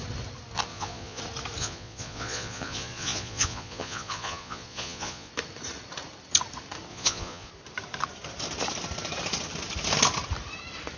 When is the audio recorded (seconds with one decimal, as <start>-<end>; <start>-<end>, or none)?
0.0-0.7; 1.2-1.6; 5.3-6.9; 7.5-11.0

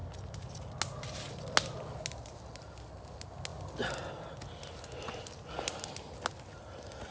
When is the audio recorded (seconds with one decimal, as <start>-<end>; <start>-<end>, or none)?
0.0-7.1

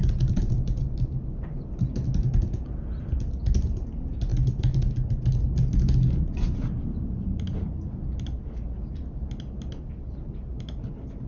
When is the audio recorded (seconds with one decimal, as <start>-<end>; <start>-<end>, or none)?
0.0-11.3

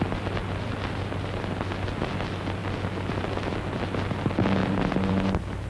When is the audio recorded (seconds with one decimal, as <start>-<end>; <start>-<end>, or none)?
0.0-0.4; 1.0-4.6; 5.1-5.7

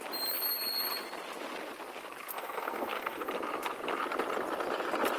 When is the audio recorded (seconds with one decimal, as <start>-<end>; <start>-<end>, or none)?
0.0-2.3; 3.3-5.2

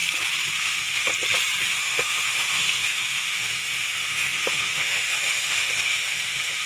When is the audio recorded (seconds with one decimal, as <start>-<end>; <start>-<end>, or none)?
0.0-0.6; 1.1-1.6

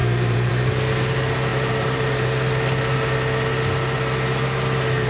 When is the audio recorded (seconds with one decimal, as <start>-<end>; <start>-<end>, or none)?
0.5-1.5; 2.5-5.1

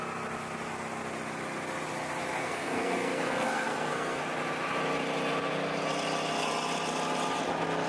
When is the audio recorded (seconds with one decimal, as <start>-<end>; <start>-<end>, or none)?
0.0-2.4; 4.2-7.9